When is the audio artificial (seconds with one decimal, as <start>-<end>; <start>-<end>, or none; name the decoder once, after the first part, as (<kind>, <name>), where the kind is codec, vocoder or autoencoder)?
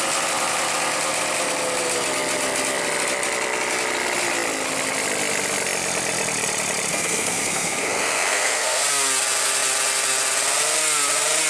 6.9-8.8 (codec, SNAC)